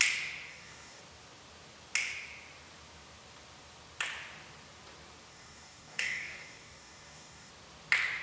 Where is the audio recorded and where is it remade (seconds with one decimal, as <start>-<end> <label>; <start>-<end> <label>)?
0.0-0.5 recorded; 0.5-1.0 remade; 1.0-5.3 recorded; 5.3-7.5 remade; 7.5-8.2 recorded